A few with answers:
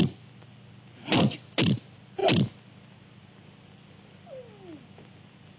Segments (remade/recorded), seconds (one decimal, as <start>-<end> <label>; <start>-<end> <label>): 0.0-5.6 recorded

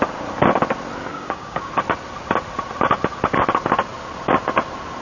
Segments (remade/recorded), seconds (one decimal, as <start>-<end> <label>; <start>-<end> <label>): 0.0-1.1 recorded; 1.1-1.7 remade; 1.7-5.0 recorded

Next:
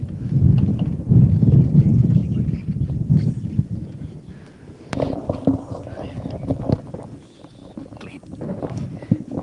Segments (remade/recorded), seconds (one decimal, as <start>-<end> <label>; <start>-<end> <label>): 0.0-0.7 recorded; 0.7-1.8 remade; 1.8-7.6 recorded; 7.6-8.6 remade; 8.6-9.4 recorded

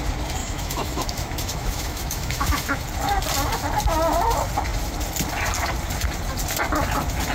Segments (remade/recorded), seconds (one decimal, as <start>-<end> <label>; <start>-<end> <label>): 0.0-0.4 recorded; 0.4-2.8 remade; 2.8-7.3 recorded